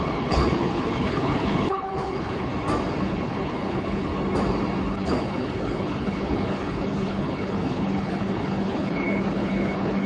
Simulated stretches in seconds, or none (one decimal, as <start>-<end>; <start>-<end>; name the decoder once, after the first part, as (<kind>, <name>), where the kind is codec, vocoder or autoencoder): 0.0-2.5 (codec, HILCodec); 3.0-4.1; 4.9-10.1